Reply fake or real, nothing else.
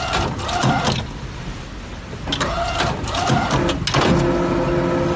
real